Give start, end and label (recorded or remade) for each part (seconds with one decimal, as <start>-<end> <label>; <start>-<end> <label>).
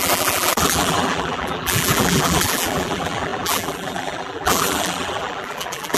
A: 0.0-6.0 remade